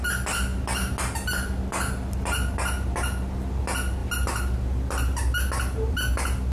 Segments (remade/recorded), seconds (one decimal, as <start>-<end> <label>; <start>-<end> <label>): 0.0-6.5 recorded